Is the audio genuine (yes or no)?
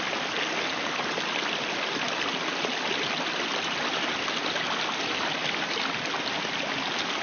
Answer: yes